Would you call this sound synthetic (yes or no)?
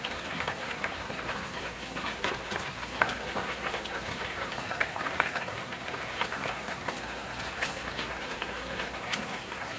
yes